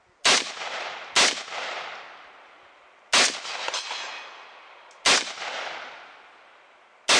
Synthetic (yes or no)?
no